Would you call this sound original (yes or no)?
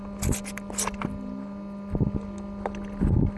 yes